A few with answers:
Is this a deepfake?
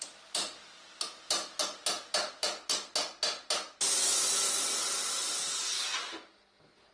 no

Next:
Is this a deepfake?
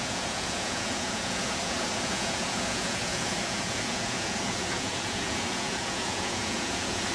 yes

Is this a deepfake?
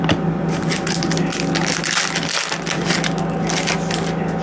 no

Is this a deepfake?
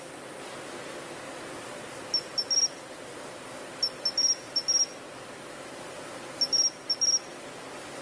no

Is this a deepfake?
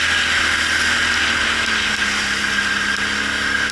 no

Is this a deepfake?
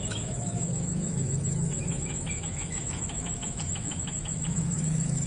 yes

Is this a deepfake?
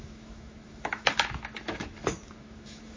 yes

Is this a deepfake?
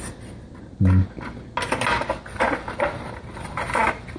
no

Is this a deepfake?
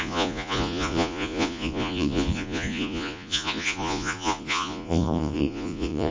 yes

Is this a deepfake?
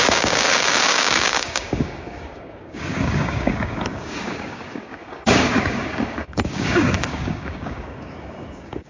yes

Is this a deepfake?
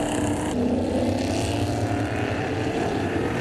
yes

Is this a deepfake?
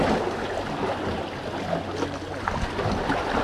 no